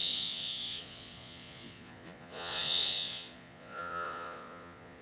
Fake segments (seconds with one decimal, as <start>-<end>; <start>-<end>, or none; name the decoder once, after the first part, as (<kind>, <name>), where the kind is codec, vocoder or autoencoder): 0.0-5.0 (vocoder, Vocos)